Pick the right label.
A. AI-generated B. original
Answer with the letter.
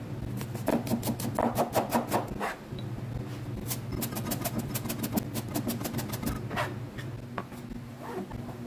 B